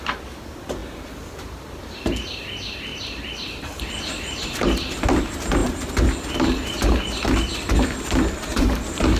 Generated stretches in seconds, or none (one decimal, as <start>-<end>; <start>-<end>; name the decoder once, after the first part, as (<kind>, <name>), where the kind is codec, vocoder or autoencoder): 2.9-3.8 (vocoder, BigVGAN v2); 5.6-6.1; 8.5-9.2